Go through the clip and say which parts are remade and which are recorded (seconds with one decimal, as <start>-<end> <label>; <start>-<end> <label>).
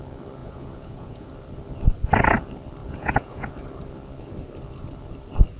0.0-0.4 recorded; 0.4-1.3 remade; 1.3-2.8 recorded; 2.8-3.5 remade; 3.5-5.6 recorded